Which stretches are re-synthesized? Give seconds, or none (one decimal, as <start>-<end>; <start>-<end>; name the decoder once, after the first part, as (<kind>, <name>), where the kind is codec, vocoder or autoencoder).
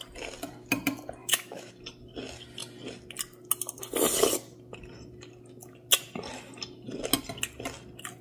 1.2-1.7 (autoencoder, DAC-VAE)